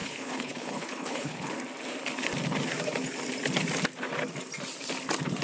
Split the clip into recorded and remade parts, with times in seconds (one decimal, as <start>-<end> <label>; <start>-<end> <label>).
0.0-1.5 remade; 1.5-5.4 recorded